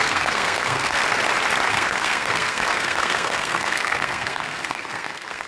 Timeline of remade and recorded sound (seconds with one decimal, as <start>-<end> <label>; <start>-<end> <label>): 0.0-1.0 remade; 1.0-1.7 recorded; 1.7-5.5 remade